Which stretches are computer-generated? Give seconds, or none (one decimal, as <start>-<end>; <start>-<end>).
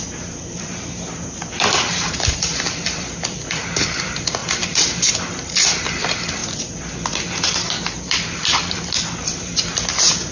0.0-10.3